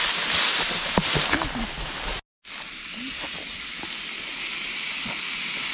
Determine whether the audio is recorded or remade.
recorded